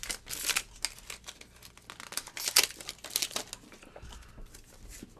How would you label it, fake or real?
real